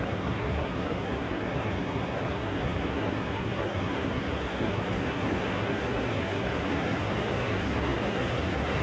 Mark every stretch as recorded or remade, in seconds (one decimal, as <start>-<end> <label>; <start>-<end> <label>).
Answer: 0.0-8.8 remade